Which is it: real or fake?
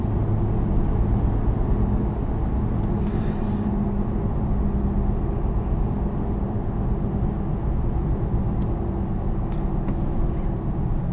real